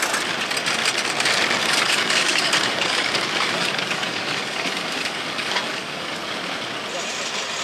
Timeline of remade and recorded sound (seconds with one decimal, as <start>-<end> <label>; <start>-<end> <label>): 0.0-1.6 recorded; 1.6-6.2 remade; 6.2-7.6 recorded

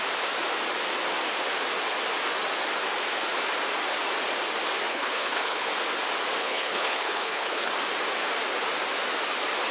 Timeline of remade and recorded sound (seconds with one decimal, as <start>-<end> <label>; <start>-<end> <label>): 0.0-4.9 recorded; 4.9-5.6 remade; 5.6-6.4 recorded; 6.4-7.7 remade; 7.7-9.7 recorded

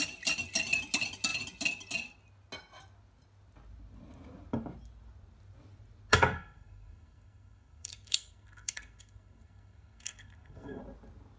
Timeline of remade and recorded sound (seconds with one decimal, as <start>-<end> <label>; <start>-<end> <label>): 0.0-6.1 recorded; 6.1-10.8 remade; 10.8-11.4 recorded

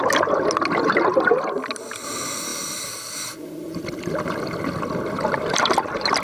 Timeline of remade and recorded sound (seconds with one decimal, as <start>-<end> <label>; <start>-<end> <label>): 0.0-6.2 recorded

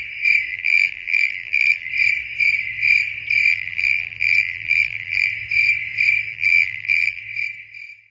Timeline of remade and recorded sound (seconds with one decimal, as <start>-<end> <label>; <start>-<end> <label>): 0.0-0.5 recorded; 0.5-1.9 remade; 1.9-3.5 recorded; 3.5-5.3 remade; 5.3-6.3 recorded; 6.3-7.2 remade; 7.2-8.1 recorded

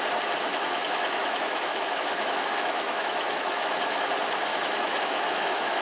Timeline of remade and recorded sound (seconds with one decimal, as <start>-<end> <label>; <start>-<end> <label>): 0.0-0.5 recorded; 0.5-4.0 remade; 4.0-4.5 recorded; 4.5-5.8 remade

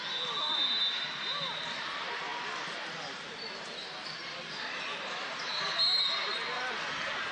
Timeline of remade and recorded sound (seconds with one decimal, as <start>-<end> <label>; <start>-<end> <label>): 0.0-7.3 recorded

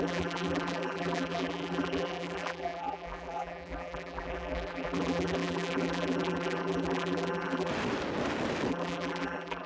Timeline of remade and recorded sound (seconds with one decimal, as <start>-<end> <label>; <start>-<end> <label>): 0.0-7.7 remade; 7.7-8.7 recorded; 8.7-9.7 remade